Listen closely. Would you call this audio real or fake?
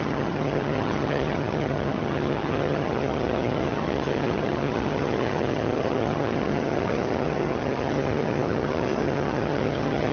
fake